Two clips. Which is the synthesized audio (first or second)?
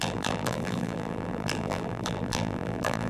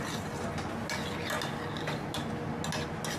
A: first